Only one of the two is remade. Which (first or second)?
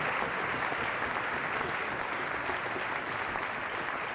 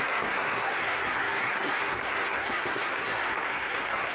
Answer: second